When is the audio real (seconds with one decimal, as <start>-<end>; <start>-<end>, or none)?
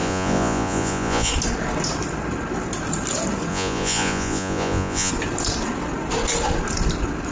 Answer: 1.3-3.5; 5.1-7.3